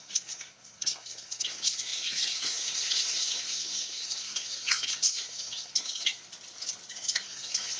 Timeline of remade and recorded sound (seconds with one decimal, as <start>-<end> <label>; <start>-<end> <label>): 0.0-6.2 remade; 6.2-6.9 recorded; 6.9-7.8 remade